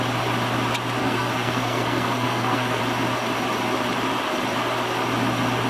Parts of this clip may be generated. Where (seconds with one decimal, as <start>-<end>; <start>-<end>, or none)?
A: 1.0-2.8